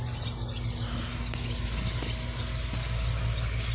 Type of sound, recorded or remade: recorded